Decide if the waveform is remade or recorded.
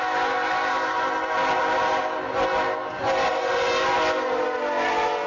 recorded